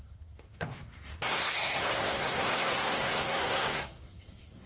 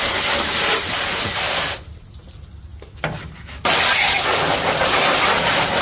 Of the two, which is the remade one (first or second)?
first